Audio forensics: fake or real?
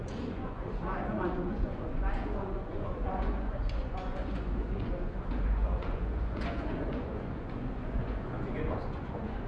fake